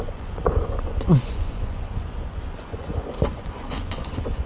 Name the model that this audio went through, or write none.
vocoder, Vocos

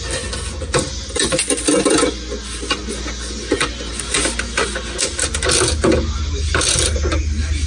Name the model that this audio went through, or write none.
none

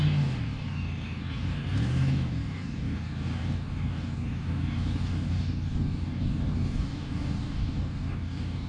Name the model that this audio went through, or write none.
codec, DAC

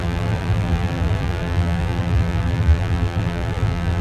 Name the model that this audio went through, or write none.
vocoder, BigVGAN v2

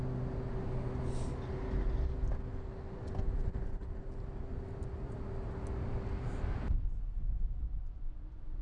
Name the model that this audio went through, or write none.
none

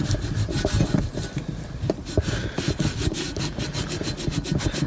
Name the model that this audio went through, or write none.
none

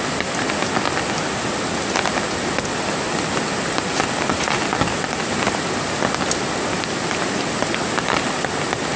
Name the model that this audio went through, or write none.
none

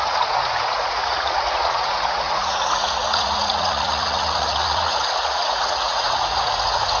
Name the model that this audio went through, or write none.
vocoder, Vocos